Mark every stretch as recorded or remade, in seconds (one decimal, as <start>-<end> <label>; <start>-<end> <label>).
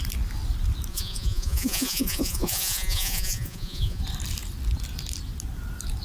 0.0-0.9 recorded; 0.9-4.0 remade; 4.0-6.0 recorded